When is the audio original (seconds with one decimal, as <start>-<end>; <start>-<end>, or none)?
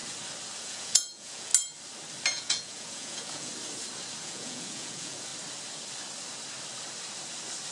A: 0.0-0.6; 1.5-2.3; 3.5-4.2; 5.3-7.7